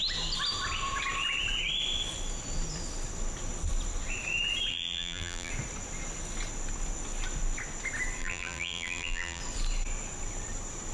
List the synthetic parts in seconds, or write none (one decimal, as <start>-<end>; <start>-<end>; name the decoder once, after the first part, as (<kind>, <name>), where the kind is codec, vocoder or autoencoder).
4.7-5.5 (vocoder, BigVGAN v2); 8.2-9.4